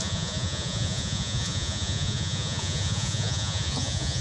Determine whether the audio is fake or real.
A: fake